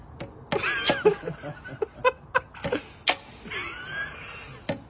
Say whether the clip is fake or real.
real